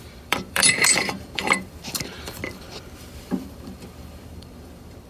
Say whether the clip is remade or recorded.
remade